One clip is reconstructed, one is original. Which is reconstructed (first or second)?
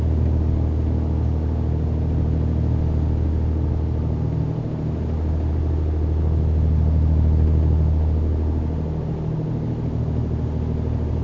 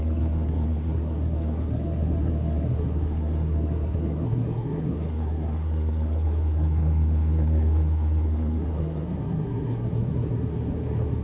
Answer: second